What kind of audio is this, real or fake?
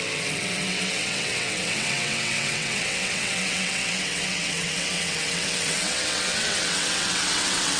fake